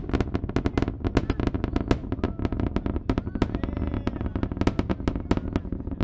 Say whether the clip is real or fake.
real